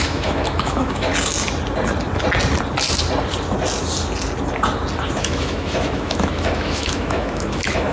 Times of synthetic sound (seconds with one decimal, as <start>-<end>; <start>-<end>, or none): 0.0-1.1; 5.2-7.9

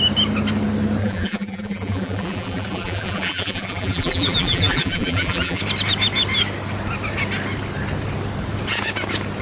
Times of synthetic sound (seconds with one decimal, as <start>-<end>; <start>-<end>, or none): 1.0-5.6